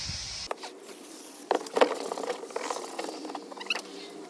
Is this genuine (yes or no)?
yes